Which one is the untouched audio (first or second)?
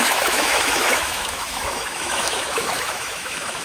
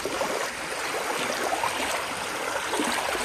second